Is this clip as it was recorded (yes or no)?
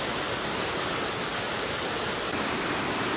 yes